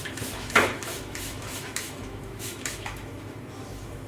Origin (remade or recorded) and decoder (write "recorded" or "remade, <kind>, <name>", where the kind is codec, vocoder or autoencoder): remade, autoencoder, DAC-VAE